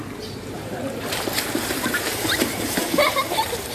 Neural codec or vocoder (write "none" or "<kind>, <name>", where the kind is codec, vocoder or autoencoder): vocoder, BigVGAN v2